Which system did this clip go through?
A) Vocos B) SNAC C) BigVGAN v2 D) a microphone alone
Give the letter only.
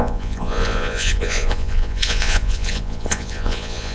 A